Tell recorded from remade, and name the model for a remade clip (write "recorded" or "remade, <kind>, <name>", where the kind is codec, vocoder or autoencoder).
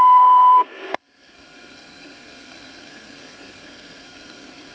remade, codec, SNAC